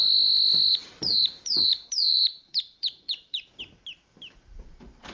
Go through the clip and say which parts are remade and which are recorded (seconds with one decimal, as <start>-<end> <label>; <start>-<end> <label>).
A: 0.0-0.7 recorded; 0.7-3.6 remade; 3.6-5.1 recorded